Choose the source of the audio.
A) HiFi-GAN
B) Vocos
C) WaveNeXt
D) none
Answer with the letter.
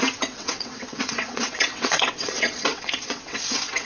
C